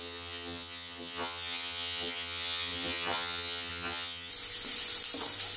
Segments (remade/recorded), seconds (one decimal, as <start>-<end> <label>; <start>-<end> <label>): 0.0-4.3 remade; 4.3-5.6 recorded